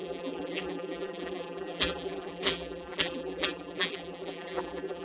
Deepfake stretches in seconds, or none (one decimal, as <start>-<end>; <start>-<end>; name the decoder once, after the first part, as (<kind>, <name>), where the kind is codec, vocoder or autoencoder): 0.0-5.0 (vocoder, BigVGAN v2)